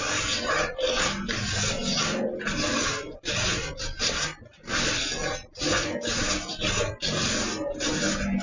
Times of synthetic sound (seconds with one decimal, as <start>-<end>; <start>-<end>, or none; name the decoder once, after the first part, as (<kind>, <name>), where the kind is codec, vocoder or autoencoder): none